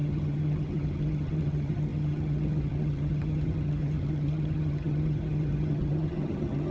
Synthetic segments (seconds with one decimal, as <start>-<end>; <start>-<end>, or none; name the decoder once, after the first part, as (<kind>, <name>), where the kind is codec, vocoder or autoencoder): 0.0-6.7 (vocoder, HiFi-GAN)